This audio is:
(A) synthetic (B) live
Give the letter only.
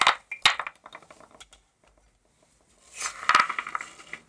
B